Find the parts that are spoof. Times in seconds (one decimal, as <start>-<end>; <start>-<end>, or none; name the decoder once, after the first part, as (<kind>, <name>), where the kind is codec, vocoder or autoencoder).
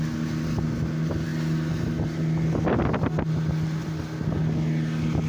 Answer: none